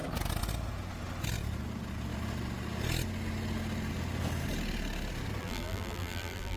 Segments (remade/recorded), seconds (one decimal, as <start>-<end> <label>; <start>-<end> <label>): 0.0-5.4 recorded; 5.4-6.6 remade